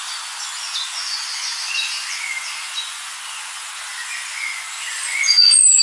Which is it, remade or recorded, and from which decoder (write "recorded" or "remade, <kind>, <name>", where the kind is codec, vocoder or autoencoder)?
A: remade, vocoder, Vocos